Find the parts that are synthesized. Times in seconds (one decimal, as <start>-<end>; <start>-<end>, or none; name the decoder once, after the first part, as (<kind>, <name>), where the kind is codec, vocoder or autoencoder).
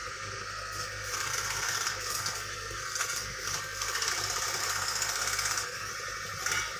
0.0-4.1 (codec, SNAC); 4.6-5.9